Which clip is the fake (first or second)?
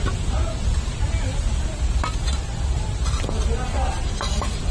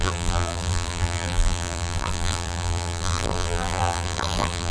second